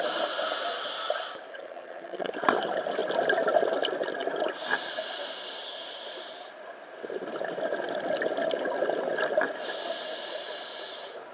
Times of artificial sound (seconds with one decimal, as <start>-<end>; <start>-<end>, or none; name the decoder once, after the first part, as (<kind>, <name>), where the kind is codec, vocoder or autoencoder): 1.5-2.3 (vocoder, HiFi-GAN)